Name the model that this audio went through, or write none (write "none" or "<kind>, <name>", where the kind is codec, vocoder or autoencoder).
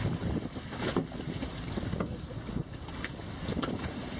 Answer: none